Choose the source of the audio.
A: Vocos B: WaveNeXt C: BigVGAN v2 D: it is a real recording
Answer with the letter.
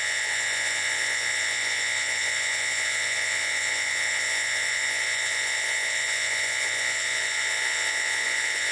A